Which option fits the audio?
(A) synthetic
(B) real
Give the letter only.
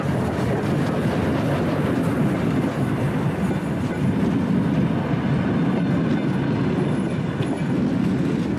B